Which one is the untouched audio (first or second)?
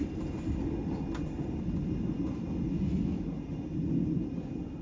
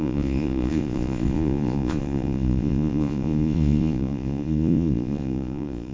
first